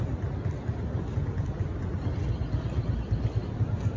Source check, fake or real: real